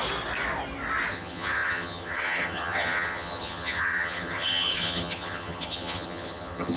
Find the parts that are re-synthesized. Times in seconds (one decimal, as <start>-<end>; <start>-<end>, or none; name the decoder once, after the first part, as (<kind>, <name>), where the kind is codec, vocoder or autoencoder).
1.1-6.8 (vocoder, HiFi-GAN)